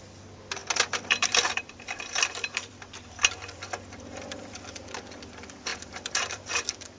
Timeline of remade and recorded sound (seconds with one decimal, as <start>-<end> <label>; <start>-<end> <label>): 0.0-0.6 recorded; 0.6-4.8 remade; 4.8-5.7 recorded; 5.7-6.4 remade; 6.4-7.0 recorded

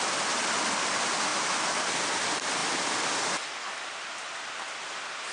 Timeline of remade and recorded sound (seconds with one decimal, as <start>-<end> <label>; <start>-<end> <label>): 0.0-1.3 recorded; 1.3-2.0 remade; 2.0-5.3 recorded

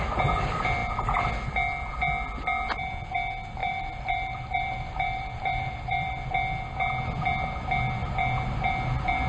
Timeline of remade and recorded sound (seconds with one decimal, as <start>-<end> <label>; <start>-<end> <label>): 0.0-3.6 recorded; 3.6-6.3 remade; 6.3-8.0 recorded; 8.0-8.7 remade; 8.7-9.3 recorded